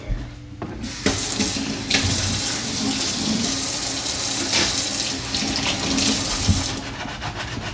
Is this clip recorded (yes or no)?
yes